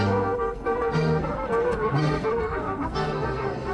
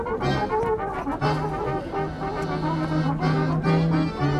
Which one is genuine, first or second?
second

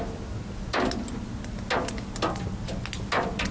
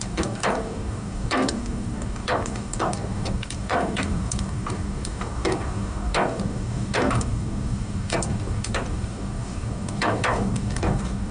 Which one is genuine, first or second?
first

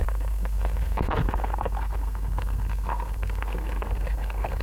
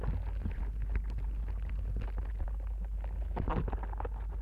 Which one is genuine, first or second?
second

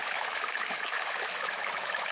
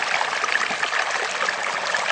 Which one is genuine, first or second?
second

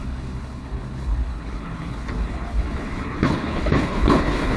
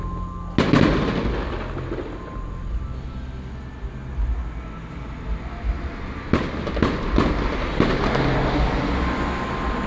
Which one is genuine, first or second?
second